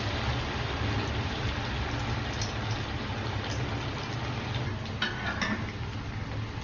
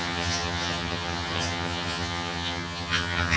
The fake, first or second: second